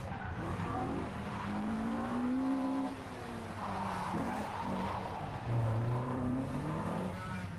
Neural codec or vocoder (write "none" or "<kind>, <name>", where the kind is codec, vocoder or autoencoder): vocoder, BigVGAN v2